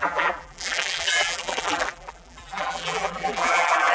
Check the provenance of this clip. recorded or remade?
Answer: remade